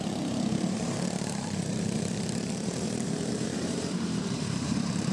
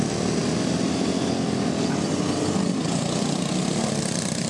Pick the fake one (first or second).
first